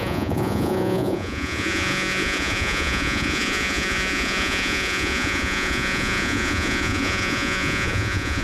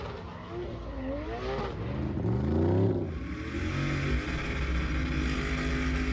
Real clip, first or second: second